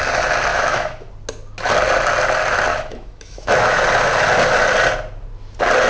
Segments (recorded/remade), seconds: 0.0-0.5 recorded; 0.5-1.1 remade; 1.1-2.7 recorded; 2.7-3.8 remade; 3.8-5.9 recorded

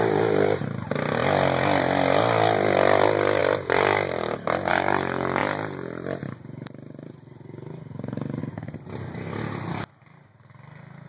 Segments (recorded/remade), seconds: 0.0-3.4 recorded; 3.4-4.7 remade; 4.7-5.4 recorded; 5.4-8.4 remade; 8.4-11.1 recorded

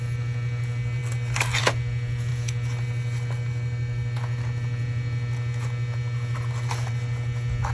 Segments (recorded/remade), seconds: 0.0-7.7 recorded

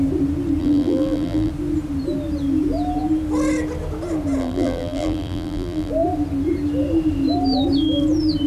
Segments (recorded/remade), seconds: 0.0-0.6 recorded; 0.6-1.5 remade; 1.5-4.4 recorded; 4.4-5.9 remade; 5.9-8.5 recorded

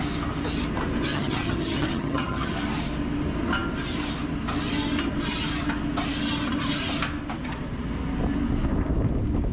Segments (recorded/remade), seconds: 0.0-1.1 recorded; 1.1-2.5 remade; 2.5-9.5 recorded

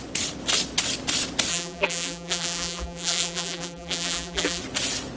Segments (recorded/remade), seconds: 0.0-1.5 recorded; 1.5-4.6 remade; 4.6-5.2 recorded